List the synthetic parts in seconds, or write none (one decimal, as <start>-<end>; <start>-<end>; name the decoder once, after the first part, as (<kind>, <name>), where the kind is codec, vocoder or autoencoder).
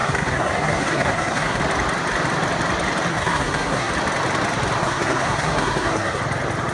0.0-1.6 (codec, SNAC); 3.1-3.9; 4.8-6.2